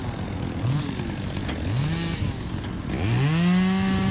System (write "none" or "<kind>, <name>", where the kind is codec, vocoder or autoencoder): none